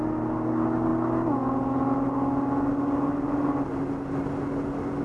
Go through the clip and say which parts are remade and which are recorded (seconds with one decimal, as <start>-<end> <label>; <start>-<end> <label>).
0.0-5.0 recorded